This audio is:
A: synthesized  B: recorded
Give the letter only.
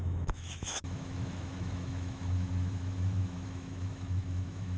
A